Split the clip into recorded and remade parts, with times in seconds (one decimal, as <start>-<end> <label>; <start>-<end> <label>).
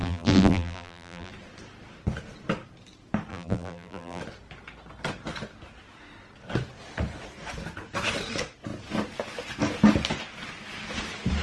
0.0-1.3 remade; 1.3-3.3 recorded; 3.3-4.2 remade; 4.2-11.4 recorded